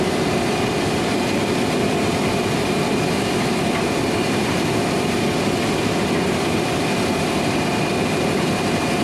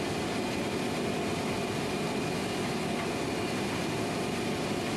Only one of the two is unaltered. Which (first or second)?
second